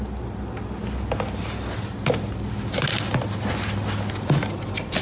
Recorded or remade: recorded